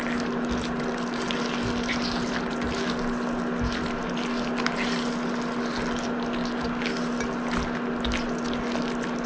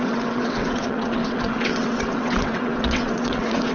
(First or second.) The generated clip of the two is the second